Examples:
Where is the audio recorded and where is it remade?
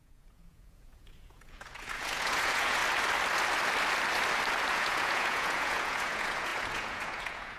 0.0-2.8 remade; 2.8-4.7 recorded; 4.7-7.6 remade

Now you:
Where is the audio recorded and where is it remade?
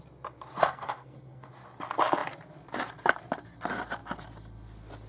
0.0-0.6 recorded; 0.6-1.5 remade; 1.5-5.1 recorded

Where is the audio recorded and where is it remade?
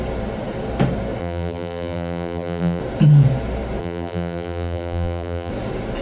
0.0-1.2 recorded; 1.2-2.8 remade; 2.8-3.8 recorded; 3.8-5.5 remade; 5.5-6.0 recorded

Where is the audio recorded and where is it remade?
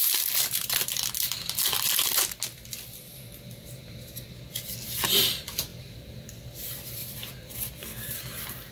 0.0-5.7 recorded; 5.7-6.6 remade; 6.6-7.0 recorded; 7.0-8.1 remade; 8.1-8.7 recorded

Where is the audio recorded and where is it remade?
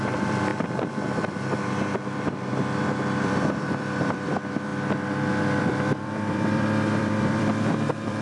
0.0-4.7 remade; 4.7-5.3 recorded; 5.3-8.2 remade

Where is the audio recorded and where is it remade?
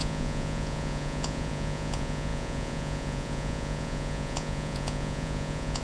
0.0-5.8 remade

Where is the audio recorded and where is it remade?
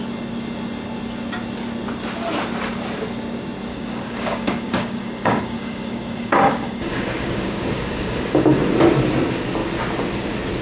0.0-3.7 recorded; 3.7-8.6 remade; 8.6-10.6 recorded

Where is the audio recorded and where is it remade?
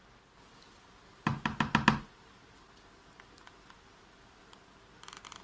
0.0-5.4 recorded